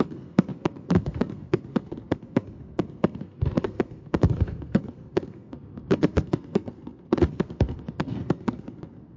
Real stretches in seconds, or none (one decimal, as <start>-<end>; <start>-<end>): none